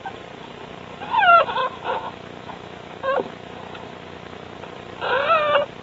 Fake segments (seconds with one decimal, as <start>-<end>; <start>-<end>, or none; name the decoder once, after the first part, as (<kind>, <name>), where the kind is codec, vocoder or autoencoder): 1.6-4.6 (autoencoder, DAC-VAE)